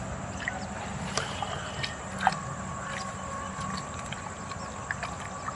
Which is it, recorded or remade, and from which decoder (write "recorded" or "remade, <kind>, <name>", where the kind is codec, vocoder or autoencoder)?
recorded